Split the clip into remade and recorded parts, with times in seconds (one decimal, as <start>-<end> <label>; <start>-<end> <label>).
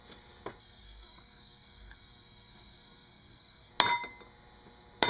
0.0-0.6 recorded; 0.6-3.7 remade; 3.7-5.1 recorded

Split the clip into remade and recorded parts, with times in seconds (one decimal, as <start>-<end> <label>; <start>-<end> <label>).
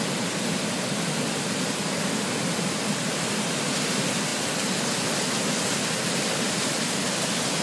0.0-7.6 recorded